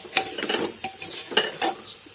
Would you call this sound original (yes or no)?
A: yes